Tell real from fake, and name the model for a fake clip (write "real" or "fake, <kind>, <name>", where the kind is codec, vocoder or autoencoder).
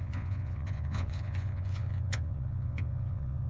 fake, vocoder, Vocos